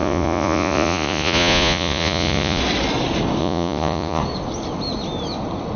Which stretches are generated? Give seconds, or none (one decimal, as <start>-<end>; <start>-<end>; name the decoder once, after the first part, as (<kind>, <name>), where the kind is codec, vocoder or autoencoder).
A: 0.0-2.6 (vocoder, Vocos); 3.4-4.2